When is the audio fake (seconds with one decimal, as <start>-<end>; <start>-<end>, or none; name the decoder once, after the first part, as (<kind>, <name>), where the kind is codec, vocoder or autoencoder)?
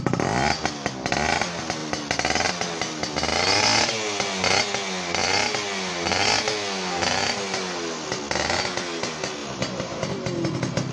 9.4-10.1 (vocoder, BigVGAN v2)